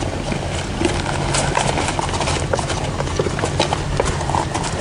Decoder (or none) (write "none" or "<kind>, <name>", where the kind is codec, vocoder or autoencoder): none